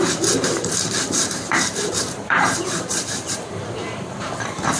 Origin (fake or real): fake